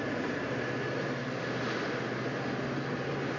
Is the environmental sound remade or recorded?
recorded